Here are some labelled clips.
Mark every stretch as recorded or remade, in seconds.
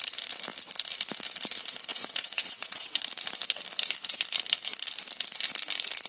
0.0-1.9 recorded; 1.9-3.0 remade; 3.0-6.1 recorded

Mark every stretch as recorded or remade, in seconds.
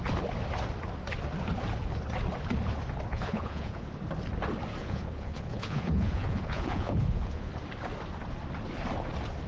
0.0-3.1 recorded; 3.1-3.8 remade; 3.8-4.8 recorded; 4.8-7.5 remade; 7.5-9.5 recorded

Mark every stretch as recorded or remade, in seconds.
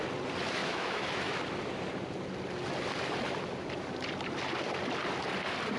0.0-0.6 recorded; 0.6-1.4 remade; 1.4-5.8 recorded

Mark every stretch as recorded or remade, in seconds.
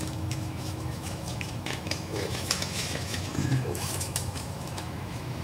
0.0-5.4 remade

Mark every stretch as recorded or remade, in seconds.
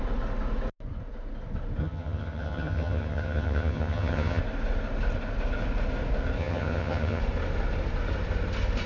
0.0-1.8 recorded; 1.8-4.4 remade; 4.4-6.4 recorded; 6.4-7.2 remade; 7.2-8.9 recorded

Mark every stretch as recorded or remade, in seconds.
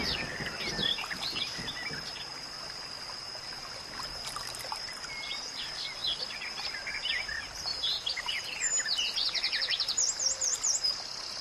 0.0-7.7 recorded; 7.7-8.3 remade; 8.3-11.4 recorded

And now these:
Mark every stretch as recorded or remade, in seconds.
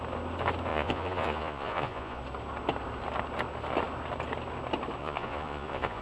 0.0-0.7 recorded; 0.7-2.2 remade; 2.2-5.0 recorded; 5.0-6.0 remade